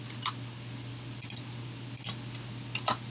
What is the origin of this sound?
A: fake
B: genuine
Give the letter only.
B